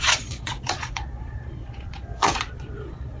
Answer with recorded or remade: remade